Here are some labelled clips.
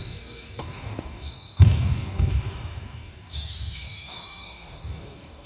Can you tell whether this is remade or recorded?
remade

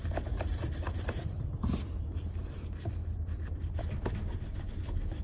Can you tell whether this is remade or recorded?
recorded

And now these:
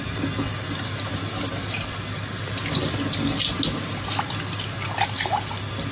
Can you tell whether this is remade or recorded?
recorded